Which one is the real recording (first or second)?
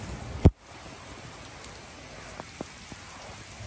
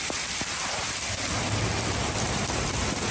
first